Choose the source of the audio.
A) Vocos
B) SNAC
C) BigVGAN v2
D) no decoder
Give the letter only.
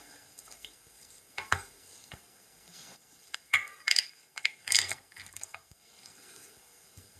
B